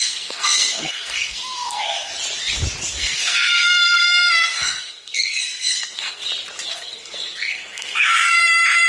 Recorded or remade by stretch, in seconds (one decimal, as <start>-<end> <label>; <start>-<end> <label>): 0.0-2.1 remade; 2.1-2.9 recorded; 2.9-6.2 remade; 6.2-6.7 recorded; 6.7-8.4 remade; 8.4-8.9 recorded